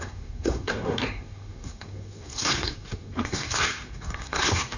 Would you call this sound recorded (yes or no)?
no